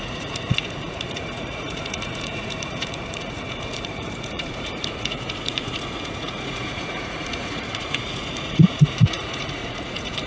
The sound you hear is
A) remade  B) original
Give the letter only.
A